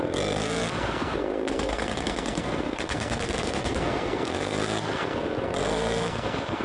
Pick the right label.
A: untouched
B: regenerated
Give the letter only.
B